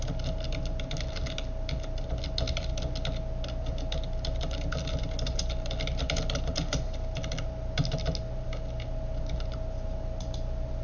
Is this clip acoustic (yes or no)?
yes